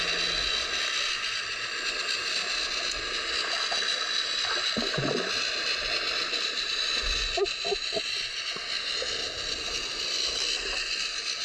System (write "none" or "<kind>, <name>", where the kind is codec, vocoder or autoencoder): none